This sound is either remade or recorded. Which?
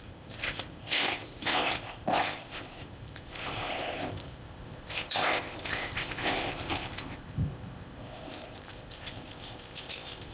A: remade